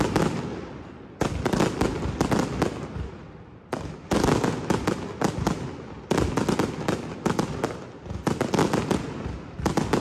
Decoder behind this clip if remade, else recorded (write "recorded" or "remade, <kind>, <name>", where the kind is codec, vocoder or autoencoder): recorded